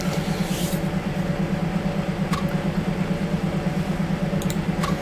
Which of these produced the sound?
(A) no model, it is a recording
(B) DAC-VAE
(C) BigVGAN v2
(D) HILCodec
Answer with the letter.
C